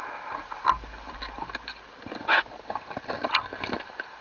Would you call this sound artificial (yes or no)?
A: no